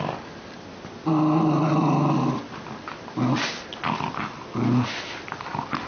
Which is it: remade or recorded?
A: recorded